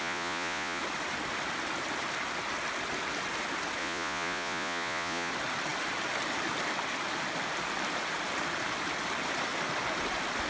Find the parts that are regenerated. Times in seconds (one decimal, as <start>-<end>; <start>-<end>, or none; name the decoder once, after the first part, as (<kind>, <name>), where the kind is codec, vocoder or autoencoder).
0.0-0.8 (vocoder, Vocos); 3.8-5.3